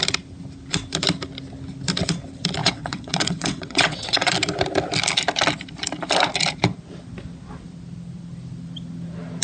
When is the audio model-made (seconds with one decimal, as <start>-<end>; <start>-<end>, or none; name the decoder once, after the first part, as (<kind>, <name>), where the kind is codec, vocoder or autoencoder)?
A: 2.6-4.3 (vocoder, WaveNeXt)